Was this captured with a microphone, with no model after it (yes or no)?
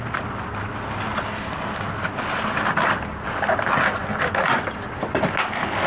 yes